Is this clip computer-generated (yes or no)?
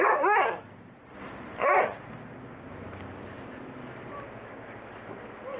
no